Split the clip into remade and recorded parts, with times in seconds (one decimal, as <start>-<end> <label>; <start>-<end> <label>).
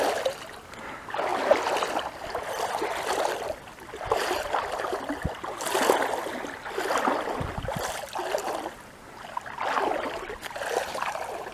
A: 0.0-11.5 recorded